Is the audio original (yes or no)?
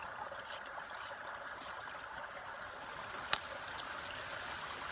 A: yes